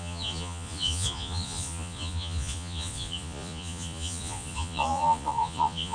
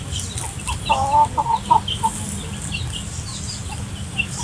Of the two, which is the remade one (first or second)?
first